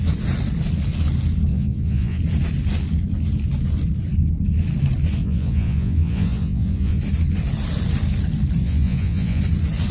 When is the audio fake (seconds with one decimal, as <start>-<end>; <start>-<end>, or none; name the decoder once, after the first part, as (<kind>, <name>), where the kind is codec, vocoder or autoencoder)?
1.5-2.2 (vocoder, Vocos); 5.2-7.0; 8.6-9.4